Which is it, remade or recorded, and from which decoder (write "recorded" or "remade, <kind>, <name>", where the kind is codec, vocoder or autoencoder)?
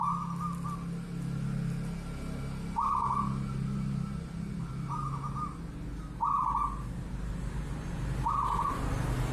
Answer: recorded